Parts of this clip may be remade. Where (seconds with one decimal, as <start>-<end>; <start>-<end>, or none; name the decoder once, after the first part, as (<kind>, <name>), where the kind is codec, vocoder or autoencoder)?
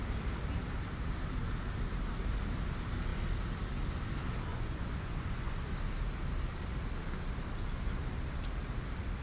4.5-5.6 (vocoder, Vocos)